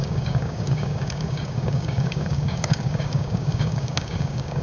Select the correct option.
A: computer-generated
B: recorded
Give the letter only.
A